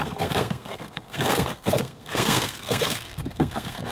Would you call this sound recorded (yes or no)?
no